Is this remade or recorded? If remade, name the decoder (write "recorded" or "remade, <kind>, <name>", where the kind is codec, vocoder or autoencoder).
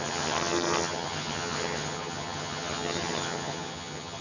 remade, vocoder, HiFi-GAN